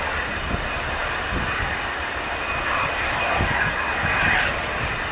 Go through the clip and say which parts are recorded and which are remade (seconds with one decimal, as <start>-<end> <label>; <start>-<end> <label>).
0.0-5.1 recorded